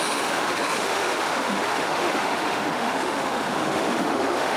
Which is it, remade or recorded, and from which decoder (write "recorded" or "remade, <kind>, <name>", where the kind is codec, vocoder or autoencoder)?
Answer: remade, autoencoder, DAC-VAE